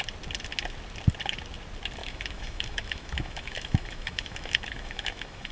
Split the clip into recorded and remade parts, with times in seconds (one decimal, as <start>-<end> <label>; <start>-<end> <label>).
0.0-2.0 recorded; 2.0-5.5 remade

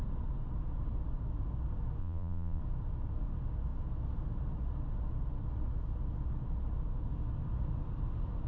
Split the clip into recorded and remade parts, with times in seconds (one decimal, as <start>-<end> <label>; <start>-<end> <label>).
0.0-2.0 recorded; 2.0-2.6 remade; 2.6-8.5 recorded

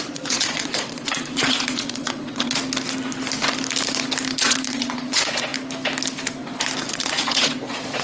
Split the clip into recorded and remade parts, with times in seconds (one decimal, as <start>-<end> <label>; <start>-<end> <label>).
0.0-2.6 remade; 2.6-4.4 recorded; 4.4-5.5 remade; 5.5-6.9 recorded; 6.9-8.0 remade